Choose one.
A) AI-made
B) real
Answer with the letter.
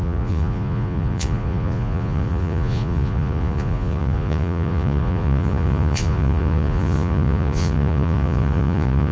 A